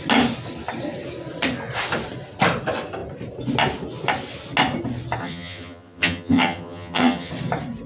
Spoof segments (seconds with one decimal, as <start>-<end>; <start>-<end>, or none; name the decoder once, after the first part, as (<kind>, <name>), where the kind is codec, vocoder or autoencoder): 5.2-7.3 (vocoder, HiFi-GAN)